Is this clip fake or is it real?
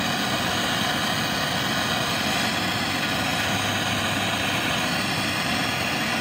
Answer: real